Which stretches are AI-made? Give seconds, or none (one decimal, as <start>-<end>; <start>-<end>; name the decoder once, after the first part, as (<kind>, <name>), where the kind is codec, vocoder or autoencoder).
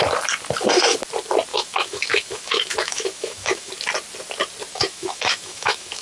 1.5-3.7 (autoencoder, DAC-VAE); 4.7-6.0